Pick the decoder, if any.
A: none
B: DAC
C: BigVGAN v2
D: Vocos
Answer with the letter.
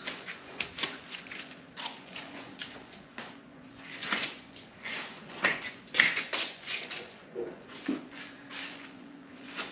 D